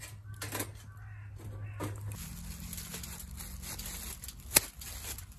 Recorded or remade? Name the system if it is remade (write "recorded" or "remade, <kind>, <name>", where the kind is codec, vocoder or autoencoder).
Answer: recorded